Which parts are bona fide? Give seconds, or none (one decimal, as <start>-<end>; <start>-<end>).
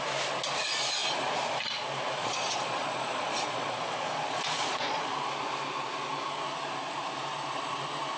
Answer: 0.0-2.2; 5.1-8.2